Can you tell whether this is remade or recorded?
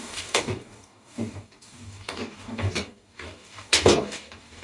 remade